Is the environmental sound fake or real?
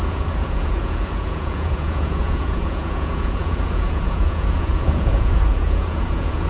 fake